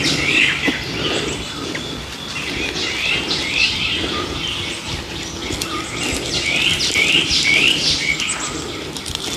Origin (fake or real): real